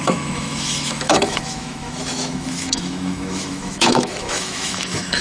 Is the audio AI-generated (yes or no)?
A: yes